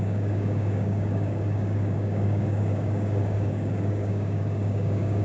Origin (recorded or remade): remade